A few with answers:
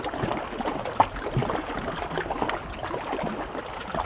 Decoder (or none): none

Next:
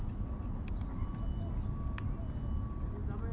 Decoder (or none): none